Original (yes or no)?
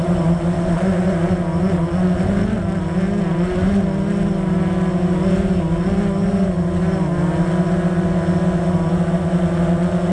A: yes